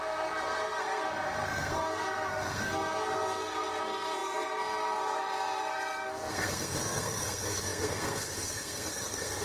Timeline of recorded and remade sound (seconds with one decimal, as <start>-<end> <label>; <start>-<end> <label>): 0.0-9.4 remade